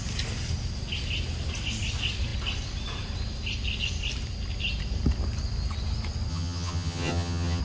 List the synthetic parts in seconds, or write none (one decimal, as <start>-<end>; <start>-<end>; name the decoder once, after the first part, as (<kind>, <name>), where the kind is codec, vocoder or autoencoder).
6.3-7.6 (vocoder, HiFi-GAN)